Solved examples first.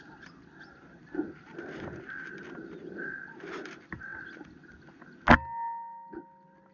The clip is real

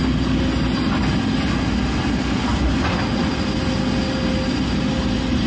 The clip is real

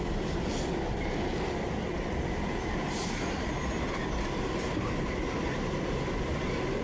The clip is real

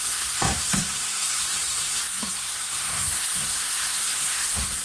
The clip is fake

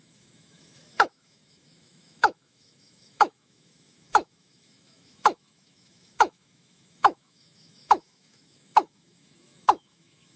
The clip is fake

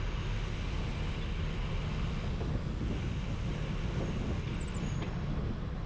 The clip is real